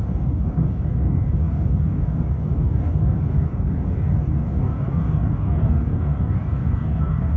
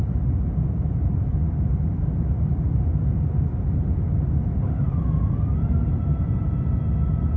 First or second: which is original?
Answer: second